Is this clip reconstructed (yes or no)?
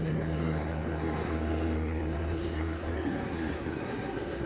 yes